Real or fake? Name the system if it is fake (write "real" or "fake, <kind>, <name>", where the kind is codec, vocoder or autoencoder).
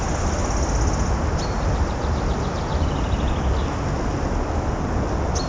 real